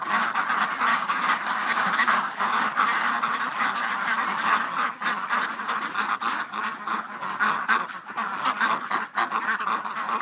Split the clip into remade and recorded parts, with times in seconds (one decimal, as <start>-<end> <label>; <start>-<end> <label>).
0.0-0.9 recorded; 0.9-2.4 remade; 2.4-10.2 recorded